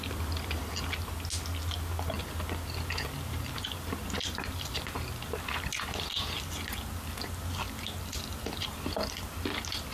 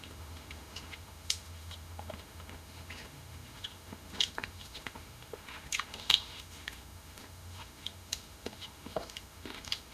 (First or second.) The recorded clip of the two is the first